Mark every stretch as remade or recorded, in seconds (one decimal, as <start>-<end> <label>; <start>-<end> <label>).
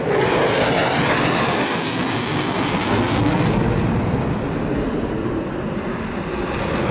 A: 0.0-6.9 recorded